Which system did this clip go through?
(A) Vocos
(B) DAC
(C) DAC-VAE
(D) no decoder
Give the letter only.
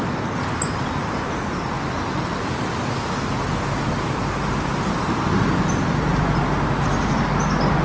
D